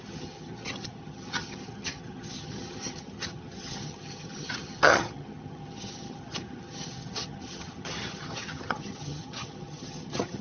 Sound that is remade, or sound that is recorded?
remade